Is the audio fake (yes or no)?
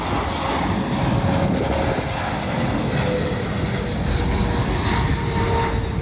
no